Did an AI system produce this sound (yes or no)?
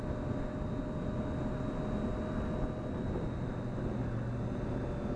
no